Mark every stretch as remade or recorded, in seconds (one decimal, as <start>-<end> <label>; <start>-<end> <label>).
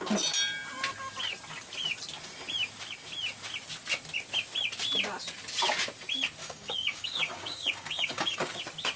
0.0-6.4 recorded; 6.4-8.6 remade; 8.6-9.0 recorded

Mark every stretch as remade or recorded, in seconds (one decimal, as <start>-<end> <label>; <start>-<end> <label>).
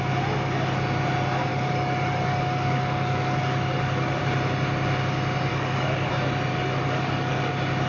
0.0-1.5 recorded; 1.5-4.2 remade; 4.2-5.5 recorded; 5.5-6.1 remade; 6.1-6.5 recorded; 6.5-7.5 remade; 7.5-7.9 recorded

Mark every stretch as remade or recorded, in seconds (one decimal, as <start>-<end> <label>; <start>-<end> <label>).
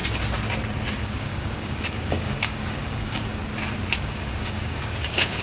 0.0-1.0 recorded; 1.0-3.4 remade; 3.4-4.0 recorded; 4.0-5.4 remade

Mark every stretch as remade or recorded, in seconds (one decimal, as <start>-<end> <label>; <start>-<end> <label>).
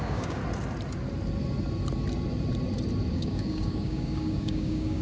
0.0-0.4 remade; 0.4-3.1 recorded; 3.1-5.0 remade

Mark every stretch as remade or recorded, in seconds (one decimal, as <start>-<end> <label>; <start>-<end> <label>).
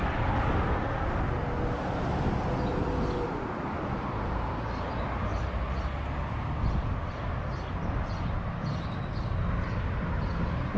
0.0-10.8 recorded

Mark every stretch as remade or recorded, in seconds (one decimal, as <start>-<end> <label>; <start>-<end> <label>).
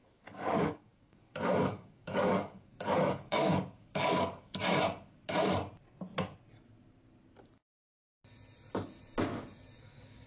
0.0-4.6 remade; 4.6-9.8 recorded; 9.8-10.3 remade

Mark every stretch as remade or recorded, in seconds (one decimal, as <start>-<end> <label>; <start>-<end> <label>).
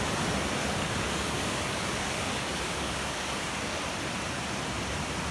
0.0-0.6 recorded; 0.6-3.8 remade; 3.8-5.3 recorded